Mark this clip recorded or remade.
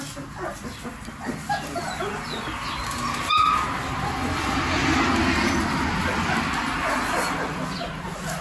recorded